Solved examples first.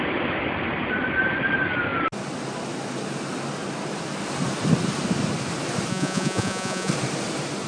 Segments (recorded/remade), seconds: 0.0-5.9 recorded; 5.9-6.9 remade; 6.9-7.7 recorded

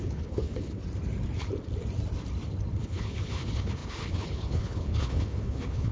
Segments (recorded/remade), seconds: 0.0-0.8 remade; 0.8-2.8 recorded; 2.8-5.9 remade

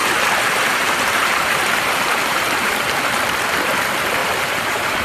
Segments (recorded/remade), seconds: 0.0-3.0 remade; 3.0-4.2 recorded; 4.2-5.0 remade

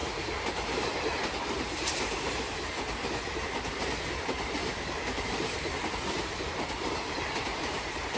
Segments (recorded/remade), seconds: 0.0-4.6 recorded; 4.6-5.9 remade; 5.9-7.5 recorded; 7.5-8.2 remade

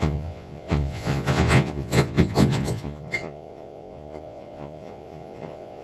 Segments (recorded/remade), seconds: 0.0-5.8 remade